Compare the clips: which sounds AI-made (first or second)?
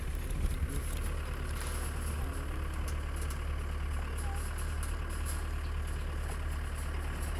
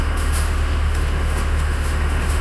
second